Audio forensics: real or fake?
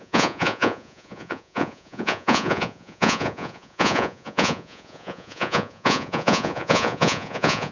fake